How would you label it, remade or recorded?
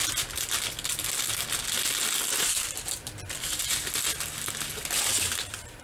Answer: recorded